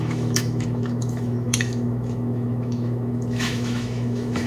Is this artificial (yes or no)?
yes